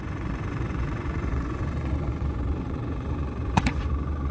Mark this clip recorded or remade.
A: remade